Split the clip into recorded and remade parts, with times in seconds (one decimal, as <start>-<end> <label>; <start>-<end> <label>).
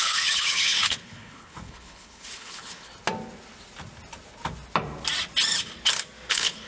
0.0-2.9 remade; 2.9-6.3 recorded; 6.3-6.7 remade